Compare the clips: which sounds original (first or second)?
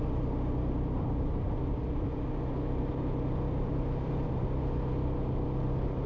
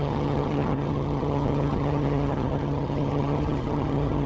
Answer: first